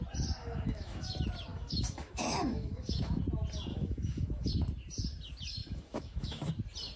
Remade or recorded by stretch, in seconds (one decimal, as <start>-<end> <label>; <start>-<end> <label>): 0.0-0.4 recorded; 0.4-1.1 remade; 1.1-1.5 recorded; 1.5-3.2 remade; 3.2-3.7 recorded; 3.7-4.5 remade; 4.5-5.6 recorded; 5.6-6.5 remade; 6.5-7.0 recorded